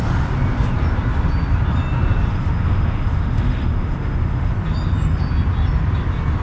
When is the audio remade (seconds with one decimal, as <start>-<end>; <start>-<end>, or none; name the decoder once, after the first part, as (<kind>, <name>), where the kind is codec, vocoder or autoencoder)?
2.3-4.5 (autoencoder, DAC-VAE)